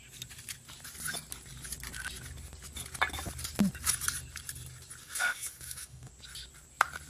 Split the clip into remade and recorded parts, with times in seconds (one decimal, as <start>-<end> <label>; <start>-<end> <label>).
0.0-5.0 recorded; 5.0-6.1 remade; 6.1-7.1 recorded